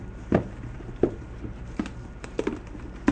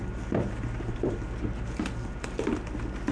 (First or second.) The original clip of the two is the second